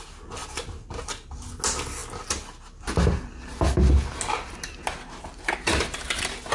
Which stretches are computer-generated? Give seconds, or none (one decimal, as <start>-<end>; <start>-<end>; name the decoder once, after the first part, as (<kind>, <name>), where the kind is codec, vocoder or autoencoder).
none